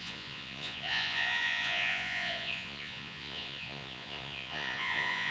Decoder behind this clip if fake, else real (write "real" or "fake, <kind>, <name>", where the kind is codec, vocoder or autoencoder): fake, vocoder, Vocos